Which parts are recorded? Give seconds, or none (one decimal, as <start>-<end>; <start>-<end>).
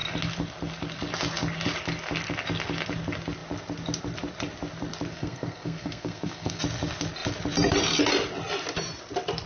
0.0-5.1; 6.6-9.5